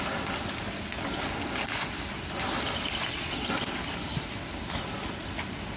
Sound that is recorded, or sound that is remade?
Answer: recorded